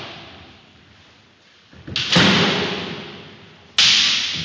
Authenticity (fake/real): real